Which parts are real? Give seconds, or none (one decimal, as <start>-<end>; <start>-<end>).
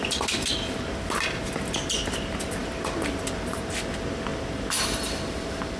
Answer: 0.0-5.8